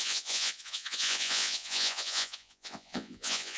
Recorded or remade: remade